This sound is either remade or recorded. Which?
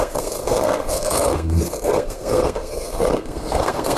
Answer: remade